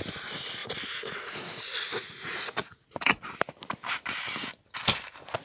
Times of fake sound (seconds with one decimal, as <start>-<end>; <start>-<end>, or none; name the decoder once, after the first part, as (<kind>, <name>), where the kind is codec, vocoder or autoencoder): 0.6-3.2 (vocoder, Vocos)